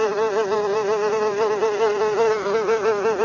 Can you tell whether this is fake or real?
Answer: fake